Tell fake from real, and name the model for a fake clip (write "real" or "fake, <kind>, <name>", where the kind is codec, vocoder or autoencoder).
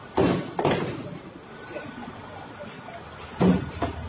real